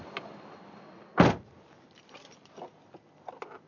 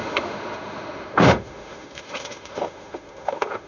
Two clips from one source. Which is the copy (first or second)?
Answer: second